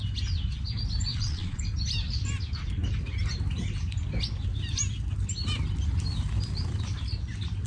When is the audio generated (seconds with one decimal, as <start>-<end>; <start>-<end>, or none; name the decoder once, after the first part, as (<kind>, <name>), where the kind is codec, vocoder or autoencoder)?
1.1-1.6 (vocoder, Vocos)